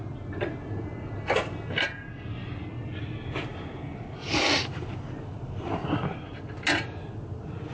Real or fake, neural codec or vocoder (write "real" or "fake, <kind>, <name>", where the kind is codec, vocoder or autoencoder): real